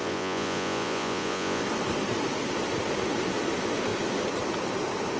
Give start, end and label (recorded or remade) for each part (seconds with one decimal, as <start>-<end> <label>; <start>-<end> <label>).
0.0-1.6 remade; 1.6-5.2 recorded